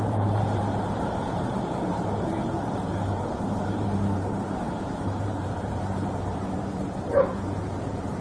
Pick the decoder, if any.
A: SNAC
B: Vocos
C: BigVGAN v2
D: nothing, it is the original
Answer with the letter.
C